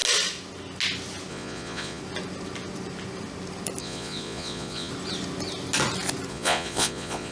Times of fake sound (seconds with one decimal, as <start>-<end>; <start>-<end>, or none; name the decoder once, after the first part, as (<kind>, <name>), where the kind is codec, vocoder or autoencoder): 1.3-2.0 (vocoder, Vocos); 3.8-4.9; 6.3-7.3